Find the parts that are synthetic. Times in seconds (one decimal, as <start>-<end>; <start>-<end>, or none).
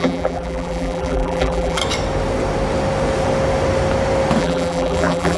0.0-1.8; 4.4-5.4